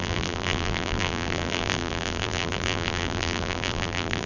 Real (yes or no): no